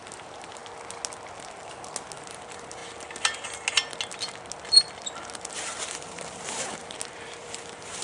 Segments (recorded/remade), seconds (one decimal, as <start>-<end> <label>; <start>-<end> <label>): 0.0-0.6 remade; 0.6-2.3 recorded; 2.3-2.8 remade; 2.8-5.5 recorded; 5.5-8.0 remade